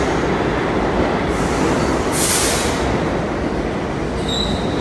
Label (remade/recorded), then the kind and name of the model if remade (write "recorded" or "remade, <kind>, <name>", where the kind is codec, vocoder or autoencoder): recorded